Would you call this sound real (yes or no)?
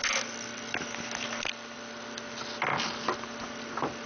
yes